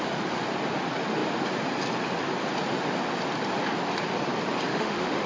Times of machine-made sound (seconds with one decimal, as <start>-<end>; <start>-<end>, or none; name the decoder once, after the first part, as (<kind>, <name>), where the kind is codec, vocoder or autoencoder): 4.7-5.3 (autoencoder, DAC-VAE)

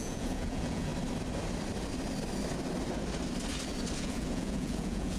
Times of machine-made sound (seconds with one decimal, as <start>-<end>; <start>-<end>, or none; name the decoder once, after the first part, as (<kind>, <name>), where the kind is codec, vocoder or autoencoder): 0.0-0.9 (vocoder, Vocos); 4.0-5.2